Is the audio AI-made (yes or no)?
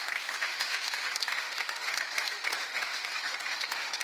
yes